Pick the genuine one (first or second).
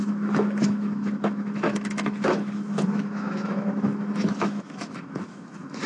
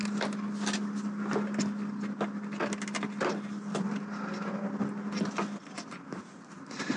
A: second